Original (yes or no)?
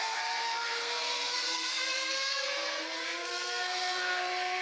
no